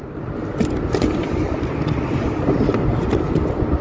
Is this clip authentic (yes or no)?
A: yes